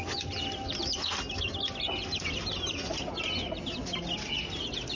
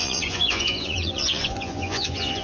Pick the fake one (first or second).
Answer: second